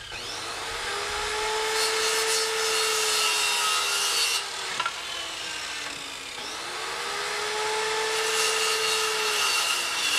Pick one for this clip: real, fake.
real